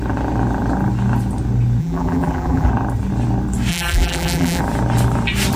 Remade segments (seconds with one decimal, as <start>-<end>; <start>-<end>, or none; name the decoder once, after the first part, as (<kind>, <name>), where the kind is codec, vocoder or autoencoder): 1.8-2.7 (vocoder, BigVGAN v2); 3.7-4.6